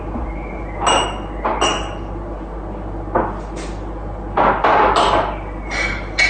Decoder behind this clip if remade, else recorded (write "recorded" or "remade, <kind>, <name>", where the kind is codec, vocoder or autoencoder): recorded